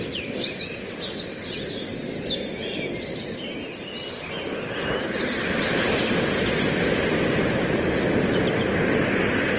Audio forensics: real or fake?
real